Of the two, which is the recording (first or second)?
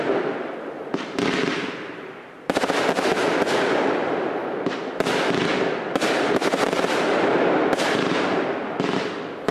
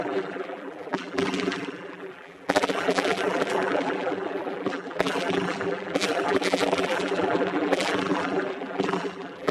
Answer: first